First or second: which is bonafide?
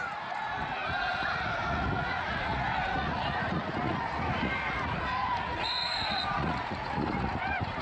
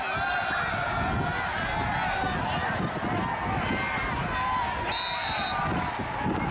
second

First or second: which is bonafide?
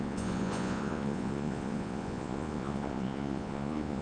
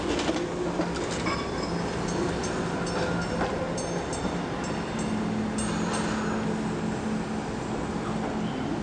second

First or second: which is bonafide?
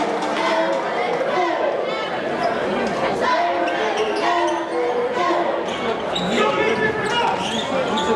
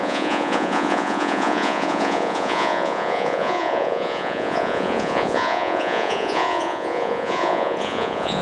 first